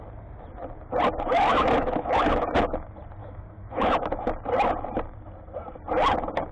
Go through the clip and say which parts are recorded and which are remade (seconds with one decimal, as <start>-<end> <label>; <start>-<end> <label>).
0.0-1.5 recorded; 1.5-2.2 remade; 2.2-3.2 recorded; 3.2-4.2 remade; 4.2-6.5 recorded